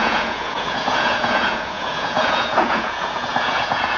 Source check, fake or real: fake